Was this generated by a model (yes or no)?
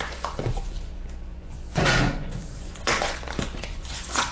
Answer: yes